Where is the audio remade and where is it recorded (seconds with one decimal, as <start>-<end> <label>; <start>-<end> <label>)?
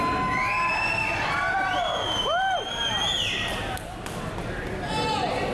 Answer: 0.0-0.7 recorded; 0.7-3.5 remade; 3.5-5.5 recorded